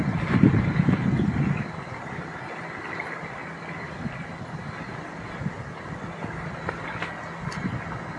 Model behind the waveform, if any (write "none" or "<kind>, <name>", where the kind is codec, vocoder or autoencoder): none